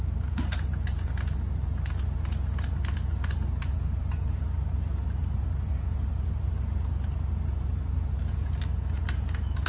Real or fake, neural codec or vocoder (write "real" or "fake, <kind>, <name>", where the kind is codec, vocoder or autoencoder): real